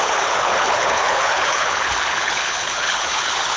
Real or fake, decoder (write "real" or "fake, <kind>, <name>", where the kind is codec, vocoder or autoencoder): fake, codec, HILCodec